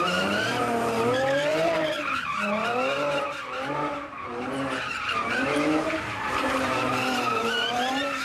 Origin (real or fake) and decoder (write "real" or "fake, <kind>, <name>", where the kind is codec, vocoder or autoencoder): fake, vocoder, BigVGAN v2